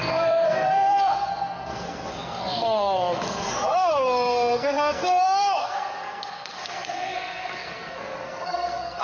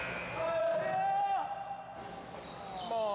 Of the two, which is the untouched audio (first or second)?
second